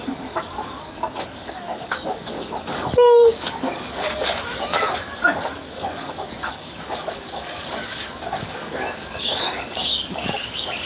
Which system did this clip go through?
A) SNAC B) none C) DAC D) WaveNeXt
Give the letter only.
C